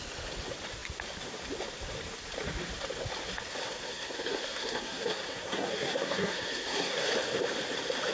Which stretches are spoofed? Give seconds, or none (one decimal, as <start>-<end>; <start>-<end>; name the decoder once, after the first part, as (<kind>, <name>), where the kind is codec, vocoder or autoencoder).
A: 3.6-7.1 (codec, SNAC)